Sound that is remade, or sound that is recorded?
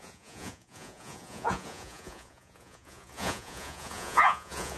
remade